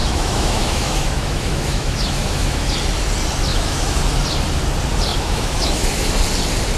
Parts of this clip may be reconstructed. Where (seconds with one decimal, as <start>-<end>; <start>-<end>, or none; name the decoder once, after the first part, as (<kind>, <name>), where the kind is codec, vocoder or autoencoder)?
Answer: 0.0-2.7 (autoencoder, DAC-VAE); 3.5-4.0; 5.1-6.1